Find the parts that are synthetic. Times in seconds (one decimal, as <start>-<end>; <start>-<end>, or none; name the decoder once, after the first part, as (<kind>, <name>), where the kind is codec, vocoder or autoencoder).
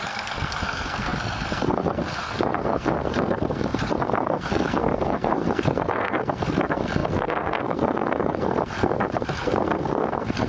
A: 0.0-10.5 (codec, SNAC)